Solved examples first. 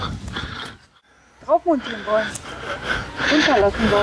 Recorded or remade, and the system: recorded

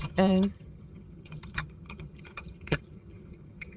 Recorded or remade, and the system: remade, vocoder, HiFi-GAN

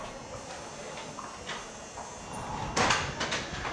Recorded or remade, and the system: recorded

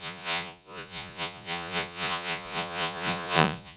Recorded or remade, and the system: remade, vocoder, Vocos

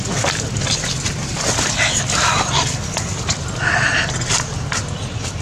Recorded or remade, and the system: recorded